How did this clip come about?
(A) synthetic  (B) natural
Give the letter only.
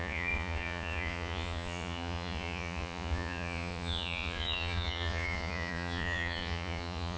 A